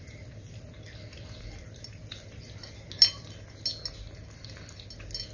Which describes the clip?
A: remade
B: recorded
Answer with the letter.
B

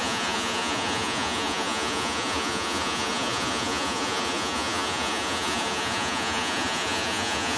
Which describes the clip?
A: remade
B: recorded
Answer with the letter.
A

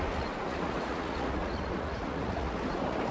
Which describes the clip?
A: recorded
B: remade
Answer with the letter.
B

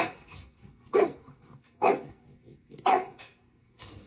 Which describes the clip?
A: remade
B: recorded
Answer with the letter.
A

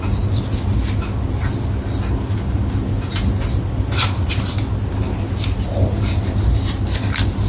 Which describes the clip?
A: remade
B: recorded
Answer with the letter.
B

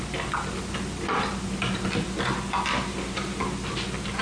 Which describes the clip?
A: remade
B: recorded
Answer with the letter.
B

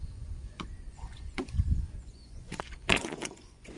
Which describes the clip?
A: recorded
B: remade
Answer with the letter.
B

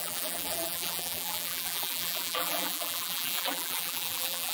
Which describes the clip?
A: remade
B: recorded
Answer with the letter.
A